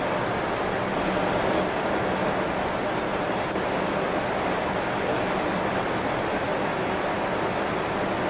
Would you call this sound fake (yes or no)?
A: no